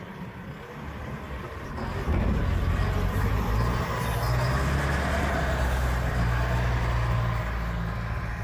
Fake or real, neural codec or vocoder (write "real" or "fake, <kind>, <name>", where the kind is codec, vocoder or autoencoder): real